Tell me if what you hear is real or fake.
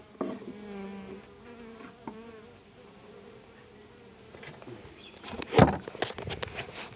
real